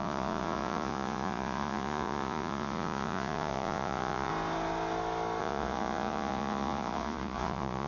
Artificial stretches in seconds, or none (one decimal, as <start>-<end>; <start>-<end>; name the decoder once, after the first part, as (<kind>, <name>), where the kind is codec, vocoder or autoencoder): 0.0-4.3 (vocoder, Vocos); 5.4-7.9